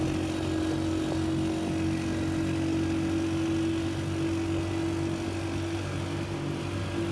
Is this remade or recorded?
recorded